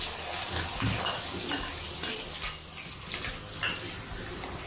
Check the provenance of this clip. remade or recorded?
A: recorded